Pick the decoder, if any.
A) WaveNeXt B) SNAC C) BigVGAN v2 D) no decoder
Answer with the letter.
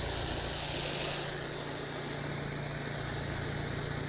D